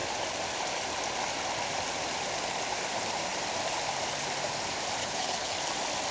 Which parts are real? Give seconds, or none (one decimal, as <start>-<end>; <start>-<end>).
0.0-5.0; 5.6-6.1